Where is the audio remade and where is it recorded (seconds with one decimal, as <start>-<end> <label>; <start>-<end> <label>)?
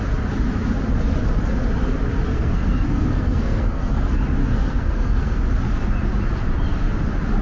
0.0-2.3 recorded; 2.3-4.0 remade; 4.0-4.4 recorded; 4.4-5.4 remade; 5.4-7.4 recorded